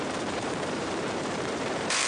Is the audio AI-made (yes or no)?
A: yes